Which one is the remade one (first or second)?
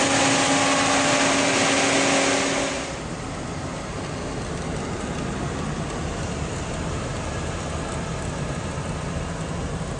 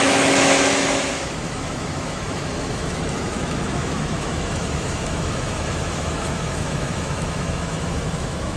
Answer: second